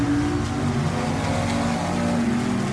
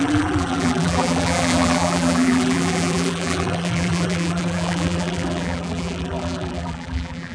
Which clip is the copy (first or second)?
second